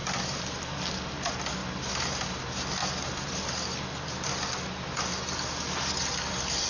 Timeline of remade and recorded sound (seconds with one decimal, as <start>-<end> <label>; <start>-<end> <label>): 0.0-6.7 recorded